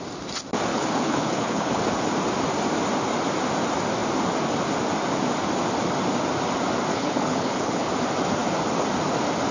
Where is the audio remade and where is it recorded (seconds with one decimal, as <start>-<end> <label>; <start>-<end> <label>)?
0.0-0.7 recorded; 0.7-1.8 remade; 1.8-6.9 recorded; 6.9-7.9 remade; 7.9-9.5 recorded